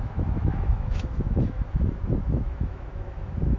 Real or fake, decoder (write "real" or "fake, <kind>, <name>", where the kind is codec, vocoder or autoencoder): fake, autoencoder, DAC-VAE